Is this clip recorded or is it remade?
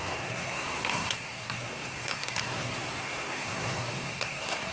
remade